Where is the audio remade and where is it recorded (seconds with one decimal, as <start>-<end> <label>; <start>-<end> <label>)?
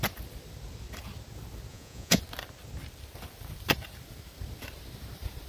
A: 0.0-1.7 recorded; 1.7-2.2 remade; 2.2-5.5 recorded